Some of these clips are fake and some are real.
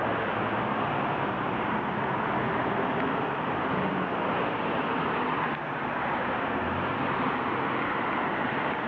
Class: real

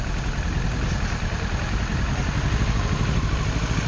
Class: real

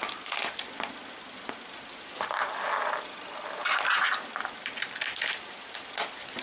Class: real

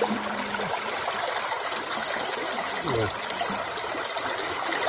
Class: real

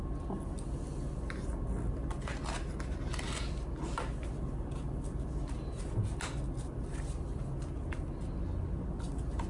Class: real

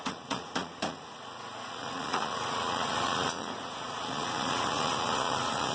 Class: fake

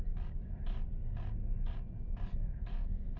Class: real